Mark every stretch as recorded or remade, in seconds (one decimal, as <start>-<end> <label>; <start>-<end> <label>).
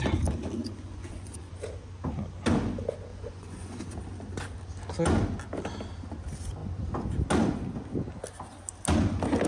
0.0-0.6 recorded; 0.6-1.5 remade; 1.5-3.1 recorded; 3.1-3.8 remade; 3.8-9.5 recorded